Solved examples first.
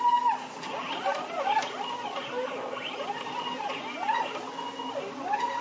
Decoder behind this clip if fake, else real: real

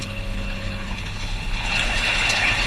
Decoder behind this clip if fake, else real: fake, codec, HILCodec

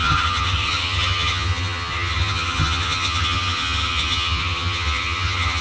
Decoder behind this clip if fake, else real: fake, vocoder, HiFi-GAN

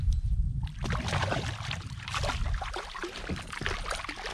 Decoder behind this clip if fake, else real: real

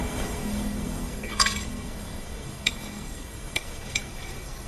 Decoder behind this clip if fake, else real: fake, codec, SNAC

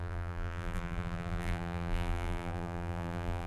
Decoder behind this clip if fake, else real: fake, vocoder, BigVGAN v2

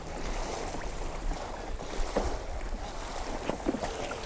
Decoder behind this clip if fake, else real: real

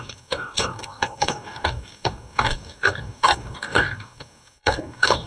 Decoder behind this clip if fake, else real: fake, codec, DAC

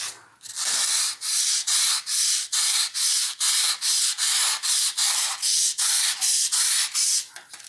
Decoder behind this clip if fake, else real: real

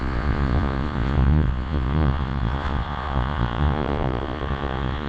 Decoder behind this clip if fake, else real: fake, vocoder, Vocos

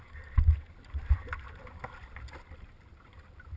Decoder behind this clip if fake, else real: real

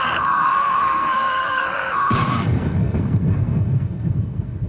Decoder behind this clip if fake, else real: fake, codec, SNAC